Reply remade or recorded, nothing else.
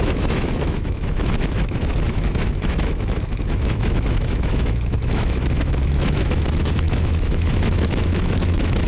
remade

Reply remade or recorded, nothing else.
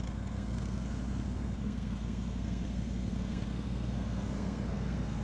remade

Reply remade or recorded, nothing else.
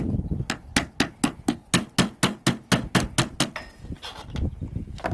recorded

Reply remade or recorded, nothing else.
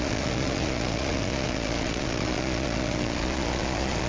remade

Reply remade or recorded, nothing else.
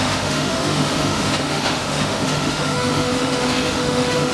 remade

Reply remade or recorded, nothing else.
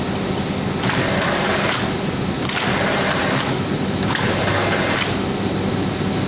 recorded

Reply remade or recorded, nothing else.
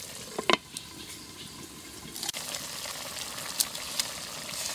recorded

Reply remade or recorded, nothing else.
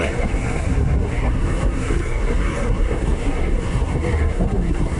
remade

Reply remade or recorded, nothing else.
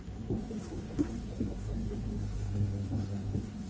remade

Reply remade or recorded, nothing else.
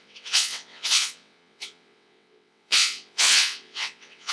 remade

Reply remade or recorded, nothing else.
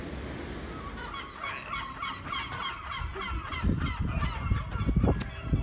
recorded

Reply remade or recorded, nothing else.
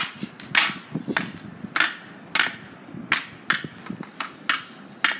recorded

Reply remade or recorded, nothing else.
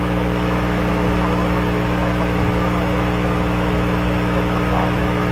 remade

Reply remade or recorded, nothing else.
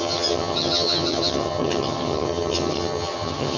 remade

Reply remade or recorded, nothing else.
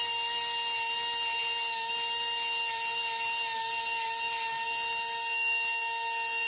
recorded